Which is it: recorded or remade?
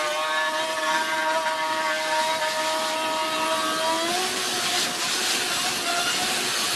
recorded